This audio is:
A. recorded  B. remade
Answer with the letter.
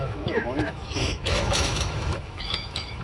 B